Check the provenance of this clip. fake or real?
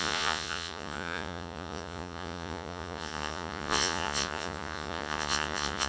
fake